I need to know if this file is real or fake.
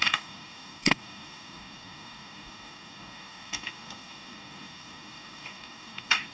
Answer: fake